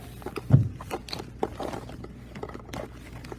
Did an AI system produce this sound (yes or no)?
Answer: no